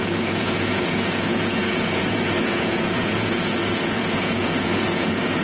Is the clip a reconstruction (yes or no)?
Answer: yes